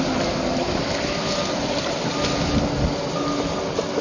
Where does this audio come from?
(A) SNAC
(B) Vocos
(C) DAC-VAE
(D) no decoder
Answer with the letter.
D